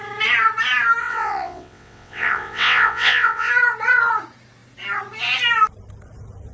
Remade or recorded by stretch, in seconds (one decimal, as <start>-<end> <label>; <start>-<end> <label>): 0.0-1.0 recorded; 1.0-3.5 remade; 3.5-6.5 recorded